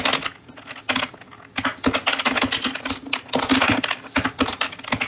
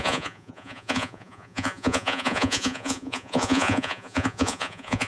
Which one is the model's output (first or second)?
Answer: second